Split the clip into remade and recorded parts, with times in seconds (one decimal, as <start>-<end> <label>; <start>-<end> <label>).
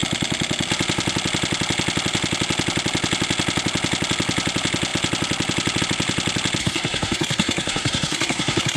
0.0-6.6 recorded; 6.6-8.8 remade